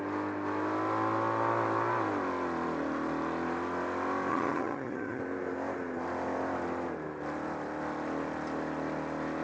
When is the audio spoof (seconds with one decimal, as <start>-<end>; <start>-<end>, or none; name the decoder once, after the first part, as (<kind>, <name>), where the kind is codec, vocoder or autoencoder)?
4.3-5.2 (vocoder, HiFi-GAN)